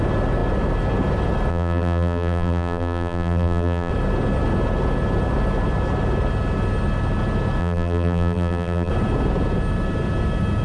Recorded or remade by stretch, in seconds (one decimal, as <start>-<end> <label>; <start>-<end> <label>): 0.0-1.5 recorded; 1.5-3.9 remade; 3.9-7.6 recorded; 7.6-8.9 remade; 8.9-10.6 recorded